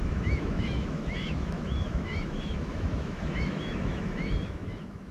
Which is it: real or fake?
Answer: fake